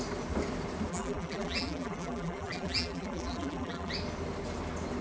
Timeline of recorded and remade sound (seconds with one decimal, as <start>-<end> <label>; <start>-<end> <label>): 0.0-0.9 recorded; 0.9-3.9 remade; 3.9-5.0 recorded